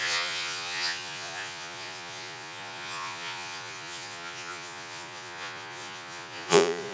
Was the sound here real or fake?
fake